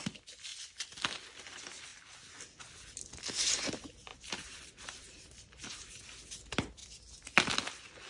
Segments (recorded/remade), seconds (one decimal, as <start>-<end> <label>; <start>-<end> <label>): 0.0-4.1 recorded; 4.1-6.0 remade; 6.0-8.1 recorded